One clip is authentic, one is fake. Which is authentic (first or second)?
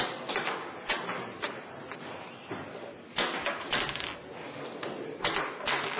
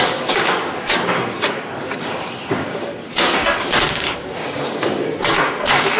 first